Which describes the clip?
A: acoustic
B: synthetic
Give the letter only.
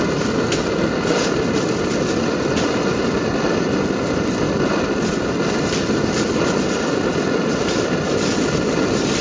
A